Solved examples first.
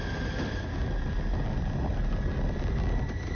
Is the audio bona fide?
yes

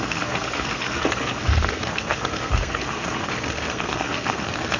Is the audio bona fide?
no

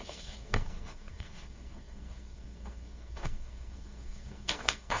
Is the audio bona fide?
no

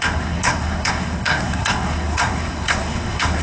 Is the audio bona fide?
no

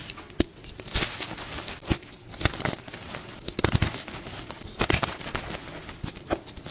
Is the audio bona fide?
yes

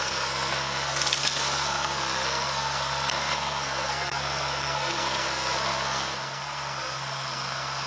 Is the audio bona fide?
no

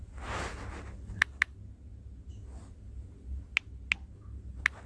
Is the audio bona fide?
yes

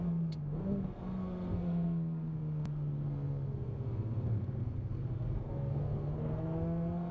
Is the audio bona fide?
no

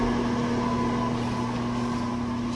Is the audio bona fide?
yes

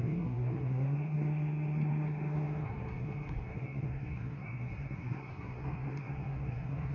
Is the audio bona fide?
no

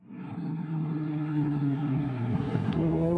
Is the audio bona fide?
no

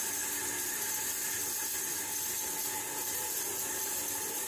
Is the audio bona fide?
yes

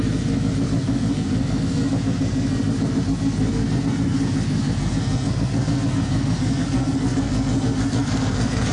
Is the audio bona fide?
no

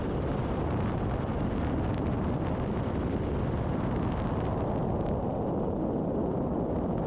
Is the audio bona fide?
yes